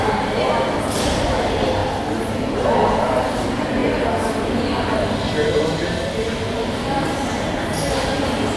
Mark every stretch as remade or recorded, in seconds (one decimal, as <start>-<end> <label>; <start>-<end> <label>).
0.0-8.6 recorded

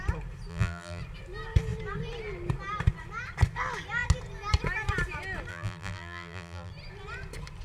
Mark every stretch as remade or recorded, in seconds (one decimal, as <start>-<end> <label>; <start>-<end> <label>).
0.0-0.5 recorded; 0.5-1.0 remade; 1.0-5.5 recorded; 5.5-6.7 remade; 6.7-7.6 recorded

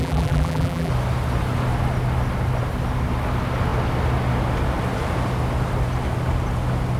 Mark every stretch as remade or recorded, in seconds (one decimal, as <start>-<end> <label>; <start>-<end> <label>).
0.0-0.9 remade; 0.9-7.0 recorded

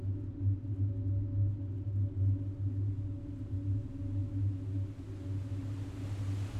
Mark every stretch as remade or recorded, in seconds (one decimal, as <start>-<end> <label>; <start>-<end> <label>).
0.0-6.6 recorded

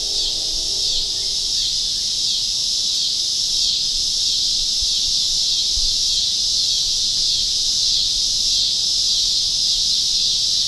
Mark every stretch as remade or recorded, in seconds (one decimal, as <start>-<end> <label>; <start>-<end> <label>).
0.0-2.6 recorded; 2.6-5.7 remade; 5.7-10.7 recorded

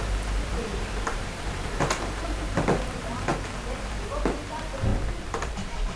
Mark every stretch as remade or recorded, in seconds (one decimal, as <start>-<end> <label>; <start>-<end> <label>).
0.0-0.5 recorded; 0.5-1.8 remade; 1.8-4.9 recorded; 4.9-6.0 remade

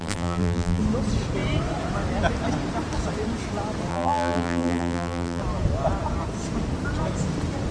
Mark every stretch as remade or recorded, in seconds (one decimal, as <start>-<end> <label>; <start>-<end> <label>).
0.0-0.8 remade; 0.8-3.9 recorded; 3.9-5.4 remade; 5.4-7.7 recorded

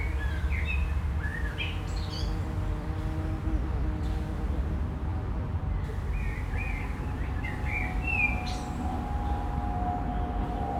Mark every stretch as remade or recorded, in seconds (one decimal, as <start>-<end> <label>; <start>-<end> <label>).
0.0-5.1 recorded; 5.1-5.6 remade; 5.6-10.8 recorded